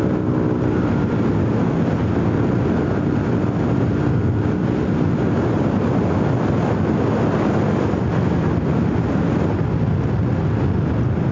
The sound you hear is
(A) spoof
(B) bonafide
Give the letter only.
B